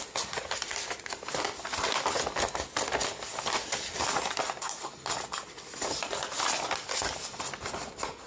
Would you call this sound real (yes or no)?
yes